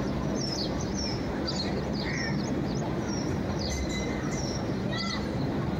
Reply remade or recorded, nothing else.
remade